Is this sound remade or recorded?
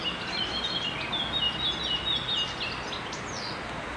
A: recorded